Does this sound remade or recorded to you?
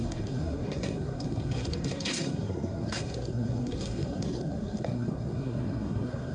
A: remade